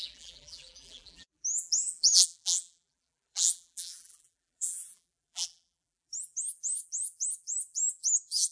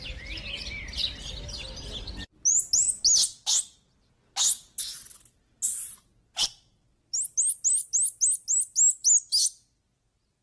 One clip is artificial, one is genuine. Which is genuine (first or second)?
second